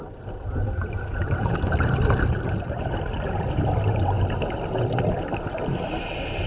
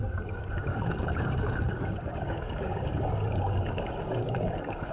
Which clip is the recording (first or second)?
first